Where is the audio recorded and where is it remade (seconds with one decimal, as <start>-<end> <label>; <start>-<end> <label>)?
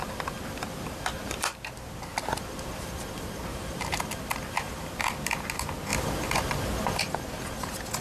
0.0-3.5 recorded; 3.5-4.0 remade; 4.0-8.0 recorded